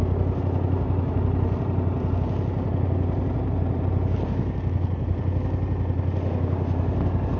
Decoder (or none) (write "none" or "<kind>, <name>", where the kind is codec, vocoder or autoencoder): none